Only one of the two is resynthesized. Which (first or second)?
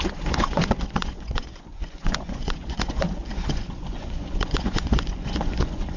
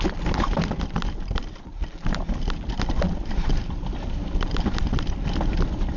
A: first